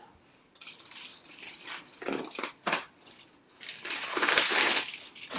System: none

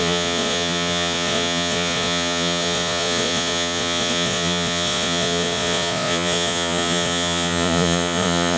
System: vocoder, Vocos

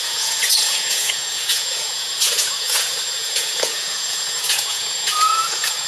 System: vocoder, Vocos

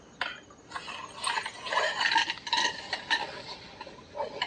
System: none